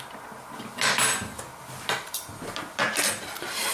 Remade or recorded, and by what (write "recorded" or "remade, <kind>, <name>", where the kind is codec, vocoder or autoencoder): recorded